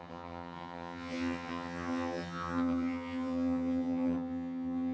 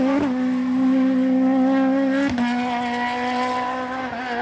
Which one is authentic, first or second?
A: second